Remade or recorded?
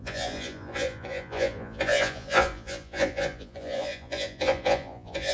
remade